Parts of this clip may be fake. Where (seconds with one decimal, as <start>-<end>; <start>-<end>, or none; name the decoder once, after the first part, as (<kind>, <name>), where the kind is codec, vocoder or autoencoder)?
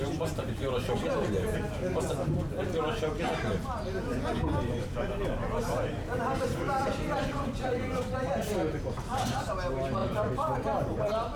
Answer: 6.8-7.8 (vocoder, BigVGAN v2); 10.0-11.4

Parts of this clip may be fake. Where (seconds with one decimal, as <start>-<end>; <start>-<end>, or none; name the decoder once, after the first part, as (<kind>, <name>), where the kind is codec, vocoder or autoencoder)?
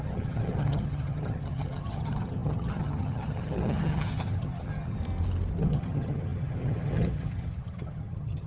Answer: 0.0-5.0 (vocoder, HiFi-GAN); 5.6-8.5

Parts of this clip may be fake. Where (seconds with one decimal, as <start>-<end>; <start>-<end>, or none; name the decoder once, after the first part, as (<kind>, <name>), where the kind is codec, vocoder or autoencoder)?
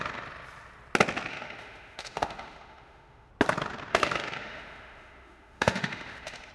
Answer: 1.3-3.3 (autoencoder, DAC-VAE); 3.9-6.5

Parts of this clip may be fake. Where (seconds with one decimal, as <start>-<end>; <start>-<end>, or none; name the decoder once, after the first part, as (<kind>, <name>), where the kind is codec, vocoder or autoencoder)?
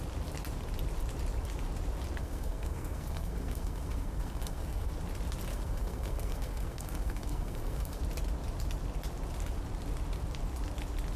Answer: 2.2-4.9 (codec, SNAC); 5.5-8.0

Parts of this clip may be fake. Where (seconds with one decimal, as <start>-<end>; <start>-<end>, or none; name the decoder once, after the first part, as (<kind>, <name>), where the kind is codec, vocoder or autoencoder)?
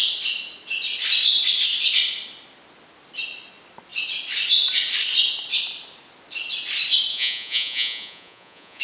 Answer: 7.1-8.8 (vocoder, Vocos)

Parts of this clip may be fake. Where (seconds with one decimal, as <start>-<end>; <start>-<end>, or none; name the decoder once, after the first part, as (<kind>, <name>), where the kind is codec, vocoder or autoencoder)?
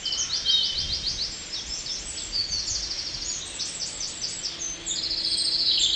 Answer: none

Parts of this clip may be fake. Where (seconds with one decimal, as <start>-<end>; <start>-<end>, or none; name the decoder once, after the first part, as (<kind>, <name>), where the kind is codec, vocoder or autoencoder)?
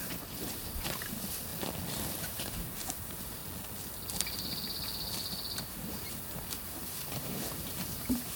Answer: 0.0-1.5 (vocoder, BigVGAN v2); 2.2-3.4; 5.6-8.4